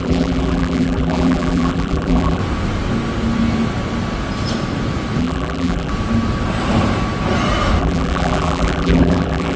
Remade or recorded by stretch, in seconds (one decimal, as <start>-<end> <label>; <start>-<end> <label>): 0.0-2.4 remade; 2.4-5.2 recorded; 5.2-5.9 remade; 5.9-7.8 recorded; 7.8-9.6 remade